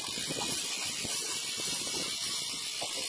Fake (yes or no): no